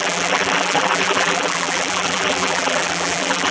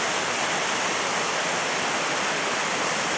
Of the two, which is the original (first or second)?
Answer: second